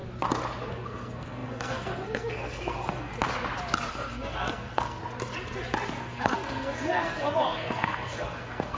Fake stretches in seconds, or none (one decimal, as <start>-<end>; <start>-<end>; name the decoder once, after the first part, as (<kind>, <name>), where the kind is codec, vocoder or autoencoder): 0.7-3.1 (codec, SNAC); 3.9-5.0; 6.0-8.8